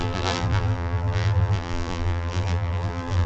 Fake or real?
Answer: fake